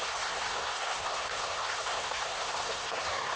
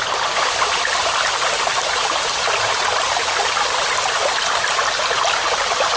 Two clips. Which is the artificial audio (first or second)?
first